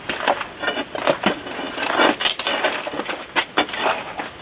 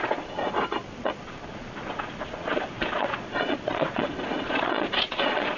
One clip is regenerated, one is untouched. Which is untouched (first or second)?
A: first